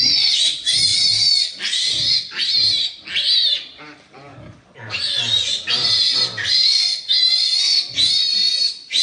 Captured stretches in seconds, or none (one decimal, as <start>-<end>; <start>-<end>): 0.0-9.0